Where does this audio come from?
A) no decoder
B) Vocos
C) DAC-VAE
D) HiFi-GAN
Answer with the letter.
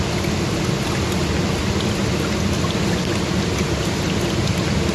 A